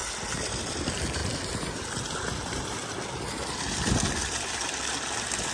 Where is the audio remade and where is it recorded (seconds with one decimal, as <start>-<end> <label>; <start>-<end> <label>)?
0.0-5.5 recorded